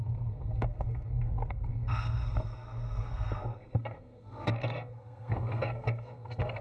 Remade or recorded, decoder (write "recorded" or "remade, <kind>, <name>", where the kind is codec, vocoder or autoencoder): remade, codec, SNAC